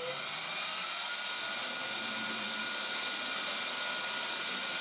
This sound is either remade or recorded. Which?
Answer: recorded